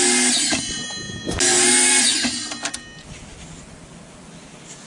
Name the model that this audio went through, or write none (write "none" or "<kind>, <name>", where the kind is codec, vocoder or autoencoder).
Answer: none